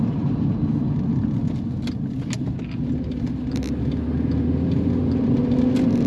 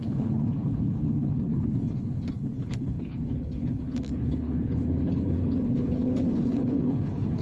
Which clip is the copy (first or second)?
second